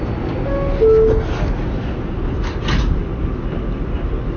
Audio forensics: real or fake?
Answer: real